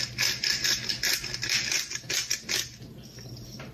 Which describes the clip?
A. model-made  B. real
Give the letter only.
B